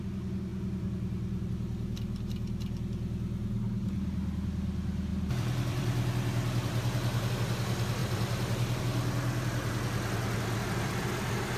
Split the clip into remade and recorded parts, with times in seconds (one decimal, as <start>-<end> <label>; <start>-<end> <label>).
0.0-0.5 recorded; 0.5-1.5 remade; 1.5-5.1 recorded; 5.1-7.3 remade; 7.3-8.0 recorded; 8.0-8.8 remade; 8.8-11.6 recorded